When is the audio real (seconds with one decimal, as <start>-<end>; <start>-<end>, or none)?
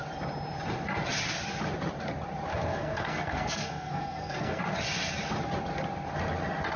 0.0-2.5; 4.6-6.8